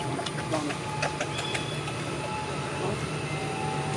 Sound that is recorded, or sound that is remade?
recorded